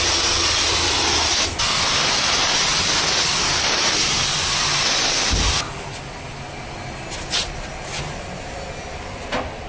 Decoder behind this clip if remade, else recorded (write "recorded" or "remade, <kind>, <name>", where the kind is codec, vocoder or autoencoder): recorded